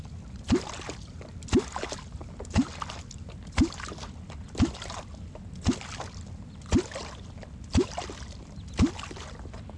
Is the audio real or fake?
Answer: real